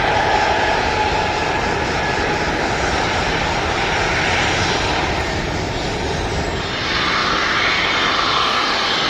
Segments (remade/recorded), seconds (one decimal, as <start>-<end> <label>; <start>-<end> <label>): 0.0-9.1 recorded